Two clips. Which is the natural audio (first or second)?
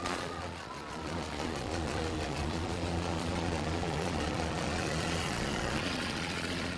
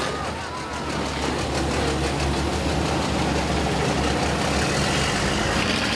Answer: second